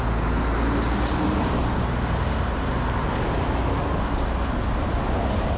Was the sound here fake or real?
real